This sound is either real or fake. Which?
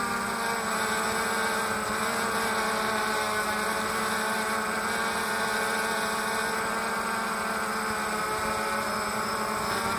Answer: real